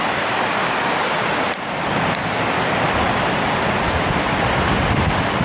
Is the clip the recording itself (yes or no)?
yes